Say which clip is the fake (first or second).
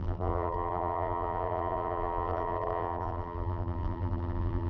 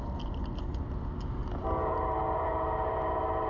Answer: first